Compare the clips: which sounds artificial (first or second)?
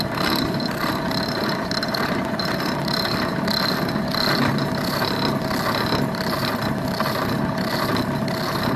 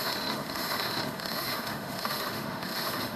second